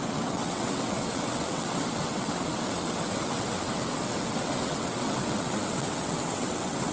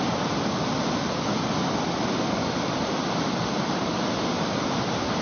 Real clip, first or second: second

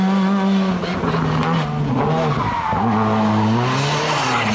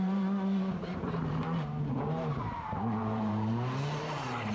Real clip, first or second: first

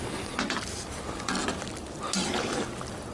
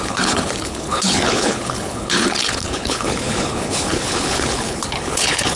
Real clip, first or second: first